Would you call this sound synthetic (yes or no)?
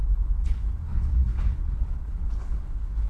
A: yes